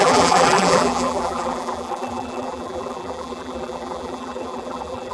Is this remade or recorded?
remade